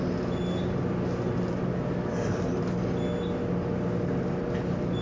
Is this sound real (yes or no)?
yes